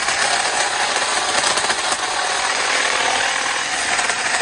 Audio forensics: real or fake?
fake